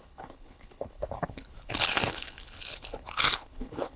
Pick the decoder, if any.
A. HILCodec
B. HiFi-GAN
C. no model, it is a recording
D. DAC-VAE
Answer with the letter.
A